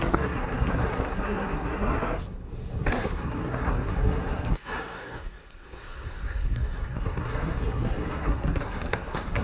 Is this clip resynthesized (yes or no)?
yes